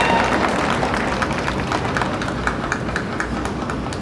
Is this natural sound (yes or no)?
yes